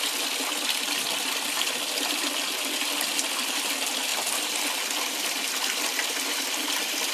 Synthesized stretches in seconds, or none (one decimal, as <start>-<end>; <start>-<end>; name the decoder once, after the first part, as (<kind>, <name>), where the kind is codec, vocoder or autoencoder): none